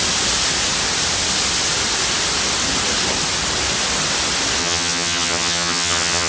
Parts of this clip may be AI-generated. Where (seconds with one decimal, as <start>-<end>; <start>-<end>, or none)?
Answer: 4.6-6.3